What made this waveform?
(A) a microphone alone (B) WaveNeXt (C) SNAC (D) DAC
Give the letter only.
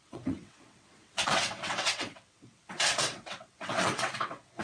B